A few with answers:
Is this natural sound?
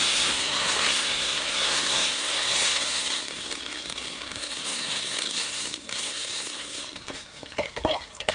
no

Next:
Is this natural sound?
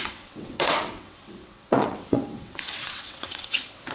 no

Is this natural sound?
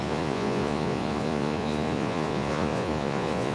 no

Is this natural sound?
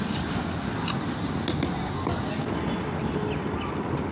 yes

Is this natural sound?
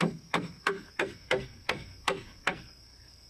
no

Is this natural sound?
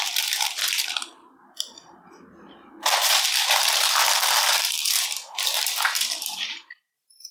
no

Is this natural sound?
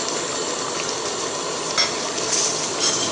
yes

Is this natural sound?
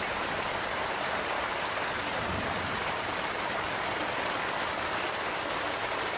no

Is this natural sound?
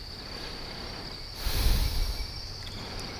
yes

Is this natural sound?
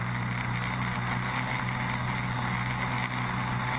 yes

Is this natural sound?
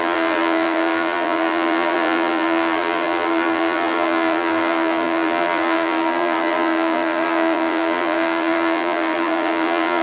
no